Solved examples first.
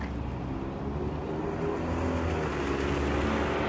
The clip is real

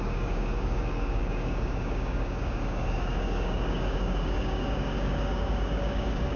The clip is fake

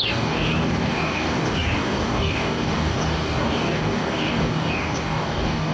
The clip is fake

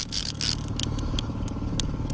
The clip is fake